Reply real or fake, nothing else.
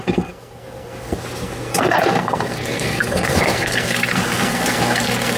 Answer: fake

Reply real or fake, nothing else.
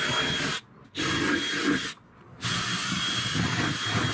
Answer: real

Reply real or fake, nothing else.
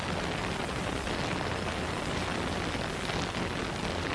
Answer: real